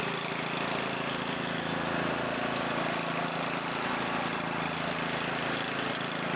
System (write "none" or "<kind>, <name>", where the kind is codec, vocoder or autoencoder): none